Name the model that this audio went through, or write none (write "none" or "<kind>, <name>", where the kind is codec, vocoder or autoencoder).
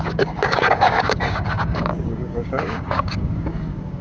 codec, DAC